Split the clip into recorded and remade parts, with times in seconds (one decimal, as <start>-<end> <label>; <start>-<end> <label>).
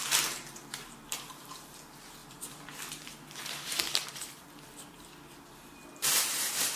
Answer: 0.0-2.2 remade; 2.2-6.3 recorded; 6.3-6.8 remade